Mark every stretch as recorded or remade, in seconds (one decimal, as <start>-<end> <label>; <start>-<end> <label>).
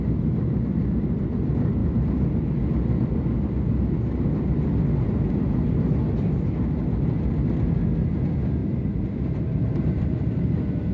0.0-8.6 recorded; 8.6-10.9 remade